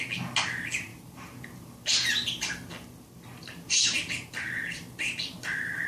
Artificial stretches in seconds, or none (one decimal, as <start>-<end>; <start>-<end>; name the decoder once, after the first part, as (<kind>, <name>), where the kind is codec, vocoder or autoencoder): 0.9-4.4 (vocoder, BigVGAN v2)